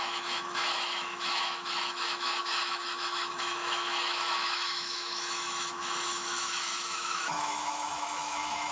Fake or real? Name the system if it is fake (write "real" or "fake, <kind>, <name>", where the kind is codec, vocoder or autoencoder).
fake, autoencoder, DAC-VAE